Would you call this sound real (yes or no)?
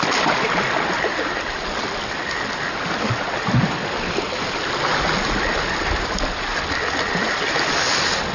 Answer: yes